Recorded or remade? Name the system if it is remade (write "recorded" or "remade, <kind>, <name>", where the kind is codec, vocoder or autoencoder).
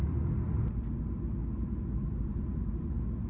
recorded